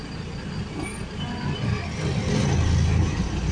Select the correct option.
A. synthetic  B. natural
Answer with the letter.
B